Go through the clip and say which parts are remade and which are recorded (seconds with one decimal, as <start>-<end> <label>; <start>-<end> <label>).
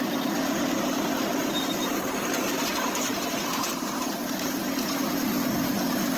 0.0-1.4 recorded; 1.4-4.5 remade; 4.5-6.2 recorded